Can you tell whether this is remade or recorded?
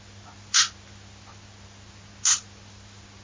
recorded